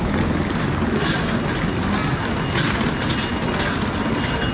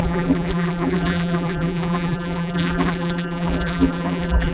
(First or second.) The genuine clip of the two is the first